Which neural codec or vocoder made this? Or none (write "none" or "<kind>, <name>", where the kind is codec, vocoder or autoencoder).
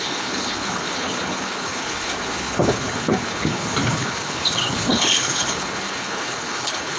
codec, HILCodec